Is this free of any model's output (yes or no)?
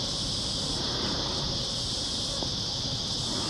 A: no